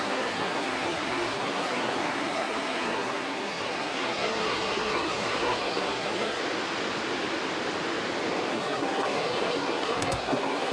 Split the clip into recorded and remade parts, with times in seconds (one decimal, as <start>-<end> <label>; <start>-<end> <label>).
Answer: 0.0-6.4 remade; 6.4-8.5 recorded; 8.5-10.7 remade